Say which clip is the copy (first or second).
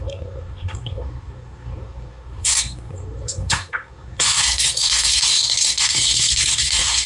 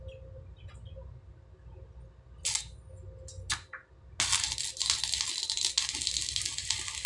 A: first